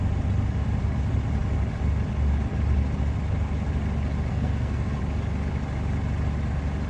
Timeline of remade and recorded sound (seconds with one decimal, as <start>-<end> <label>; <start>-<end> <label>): 0.0-4.3 recorded; 4.3-5.0 remade; 5.0-6.9 recorded